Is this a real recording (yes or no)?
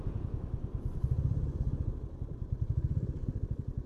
no